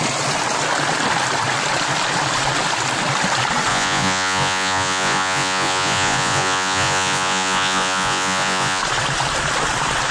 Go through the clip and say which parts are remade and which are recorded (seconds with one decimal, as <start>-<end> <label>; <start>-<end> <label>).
0.0-3.7 recorded; 3.7-8.8 remade; 8.8-10.1 recorded